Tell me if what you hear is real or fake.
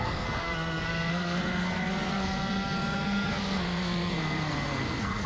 fake